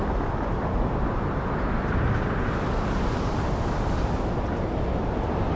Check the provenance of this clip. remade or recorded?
recorded